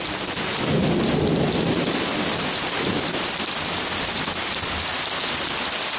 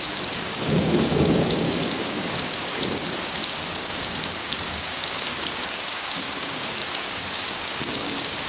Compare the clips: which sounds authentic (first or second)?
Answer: first